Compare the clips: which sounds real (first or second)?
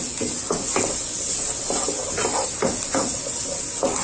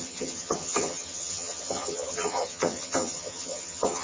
first